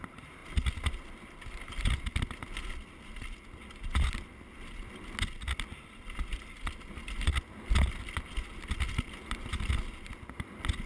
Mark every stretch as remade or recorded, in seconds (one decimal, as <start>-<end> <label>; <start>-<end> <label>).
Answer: 0.0-10.9 recorded